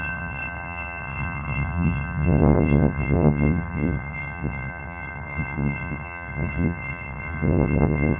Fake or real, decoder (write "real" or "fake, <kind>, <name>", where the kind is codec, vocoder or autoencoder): fake, vocoder, WaveNeXt